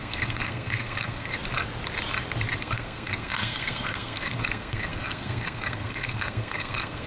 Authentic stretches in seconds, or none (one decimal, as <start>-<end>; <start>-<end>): 1.4-2.6